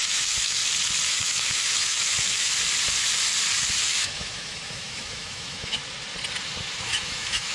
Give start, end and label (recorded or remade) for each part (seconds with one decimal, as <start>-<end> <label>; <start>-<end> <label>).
0.0-0.6 remade; 0.6-1.1 recorded; 1.1-2.5 remade; 2.5-3.8 recorded; 3.8-5.8 remade; 5.8-6.8 recorded; 6.8-7.5 remade